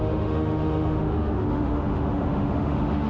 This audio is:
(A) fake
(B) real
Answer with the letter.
A